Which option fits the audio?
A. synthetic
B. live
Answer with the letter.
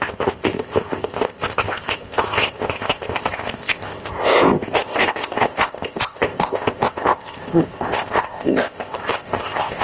A